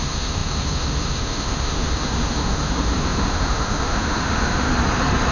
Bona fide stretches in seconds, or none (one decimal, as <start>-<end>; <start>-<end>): 4.7-5.3